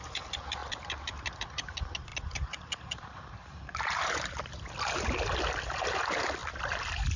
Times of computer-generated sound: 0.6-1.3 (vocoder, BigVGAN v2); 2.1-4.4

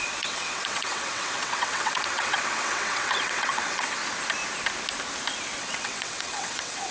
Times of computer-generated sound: 0.0-4.0 (vocoder, WaveNeXt); 5.6-6.9

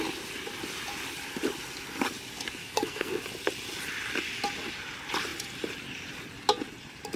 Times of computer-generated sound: 2.6-3.1 (codec, SNAC)